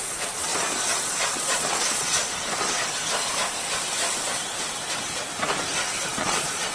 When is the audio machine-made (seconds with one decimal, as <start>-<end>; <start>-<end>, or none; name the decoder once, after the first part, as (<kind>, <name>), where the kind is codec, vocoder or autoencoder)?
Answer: 0.0-0.5 (vocoder, Vocos); 1.2-2.2; 6.2-6.7